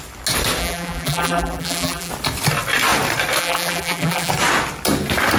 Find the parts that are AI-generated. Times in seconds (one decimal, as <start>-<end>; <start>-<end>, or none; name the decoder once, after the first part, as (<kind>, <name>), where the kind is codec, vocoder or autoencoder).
0.6-2.1 (vocoder, BigVGAN v2); 3.4-4.3